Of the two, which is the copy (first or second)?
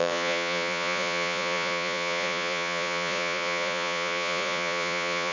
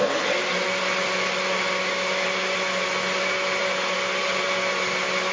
first